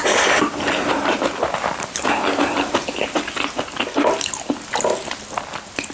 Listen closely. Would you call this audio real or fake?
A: real